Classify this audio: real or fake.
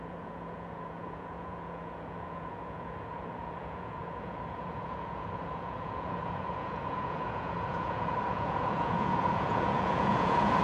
fake